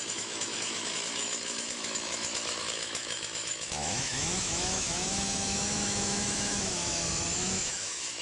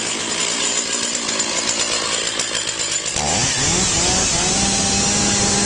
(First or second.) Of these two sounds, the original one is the second